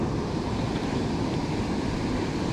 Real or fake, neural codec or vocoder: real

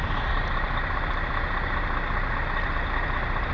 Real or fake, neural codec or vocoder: real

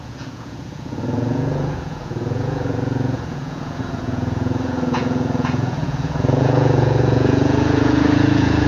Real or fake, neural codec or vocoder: fake, vocoder, Vocos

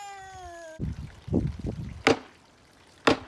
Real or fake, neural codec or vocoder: real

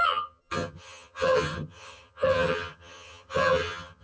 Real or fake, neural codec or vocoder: fake, vocoder, HiFi-GAN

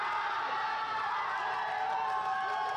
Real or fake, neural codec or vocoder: real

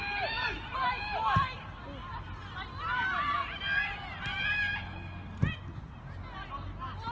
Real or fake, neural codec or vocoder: real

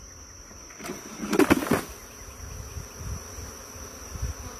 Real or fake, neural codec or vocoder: real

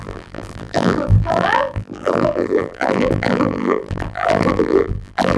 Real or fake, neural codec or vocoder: fake, vocoder, BigVGAN v2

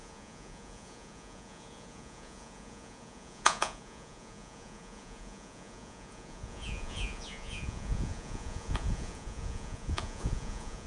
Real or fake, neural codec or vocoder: fake, vocoder, Vocos